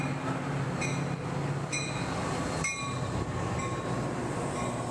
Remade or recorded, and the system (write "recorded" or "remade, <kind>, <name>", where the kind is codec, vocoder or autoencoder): recorded